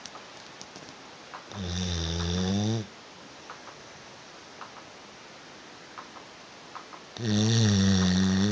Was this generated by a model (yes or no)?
no